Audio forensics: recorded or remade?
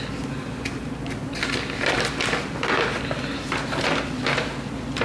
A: recorded